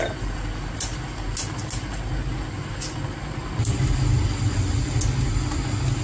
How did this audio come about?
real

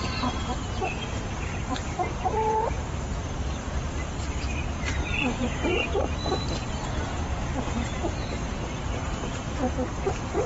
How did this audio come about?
fake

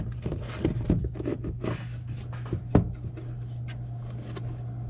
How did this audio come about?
real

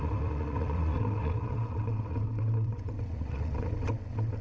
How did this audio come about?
fake